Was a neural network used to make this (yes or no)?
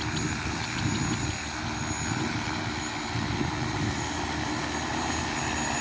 no